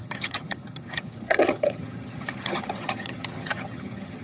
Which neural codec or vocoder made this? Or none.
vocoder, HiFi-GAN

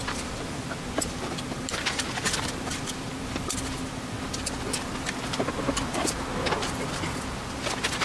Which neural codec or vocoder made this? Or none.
none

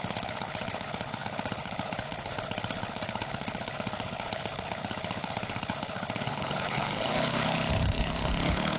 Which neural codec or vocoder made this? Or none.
codec, HILCodec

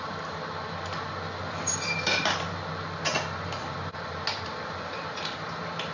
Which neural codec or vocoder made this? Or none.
none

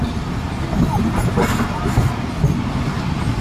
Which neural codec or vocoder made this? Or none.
none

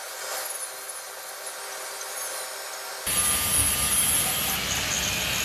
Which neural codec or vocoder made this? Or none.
none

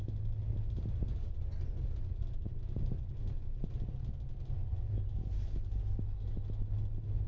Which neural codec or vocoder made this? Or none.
none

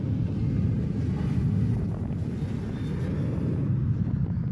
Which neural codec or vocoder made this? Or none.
none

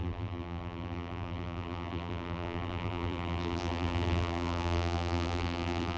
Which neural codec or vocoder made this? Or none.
vocoder, BigVGAN v2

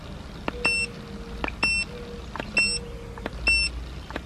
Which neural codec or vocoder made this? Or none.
none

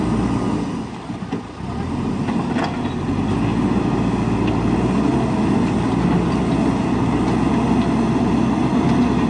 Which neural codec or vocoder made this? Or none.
none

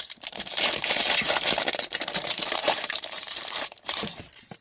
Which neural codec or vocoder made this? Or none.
vocoder, BigVGAN v2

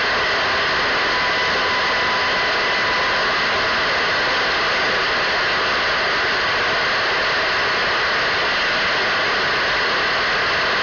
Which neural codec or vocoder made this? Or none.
none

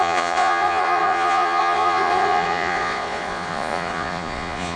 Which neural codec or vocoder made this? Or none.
vocoder, Vocos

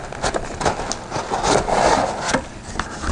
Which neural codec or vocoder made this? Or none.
none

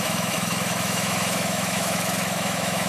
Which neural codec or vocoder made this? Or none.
autoencoder, DAC-VAE